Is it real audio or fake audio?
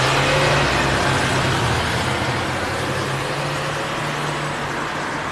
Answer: real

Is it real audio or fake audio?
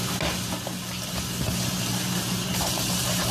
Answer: real